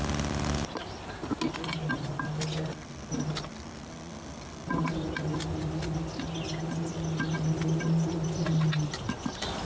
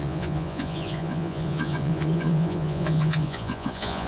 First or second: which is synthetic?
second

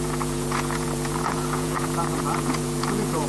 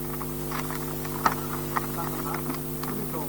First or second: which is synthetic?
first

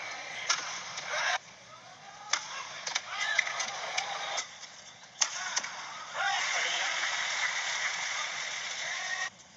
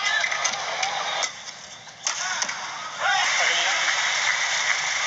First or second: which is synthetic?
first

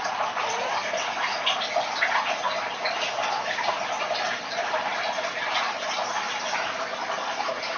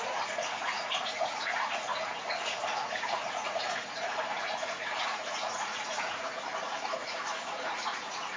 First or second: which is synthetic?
second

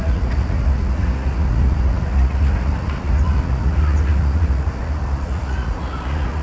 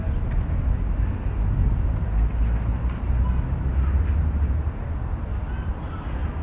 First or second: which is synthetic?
first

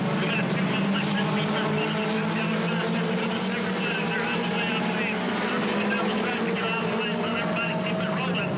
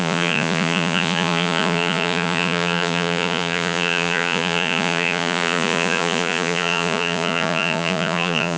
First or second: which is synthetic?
second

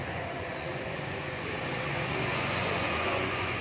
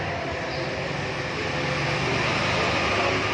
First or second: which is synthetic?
first